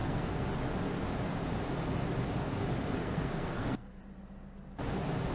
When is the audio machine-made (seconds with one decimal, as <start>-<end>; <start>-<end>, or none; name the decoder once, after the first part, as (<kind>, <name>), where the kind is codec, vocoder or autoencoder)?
0.0-0.5 (codec, SNAC); 3.0-4.0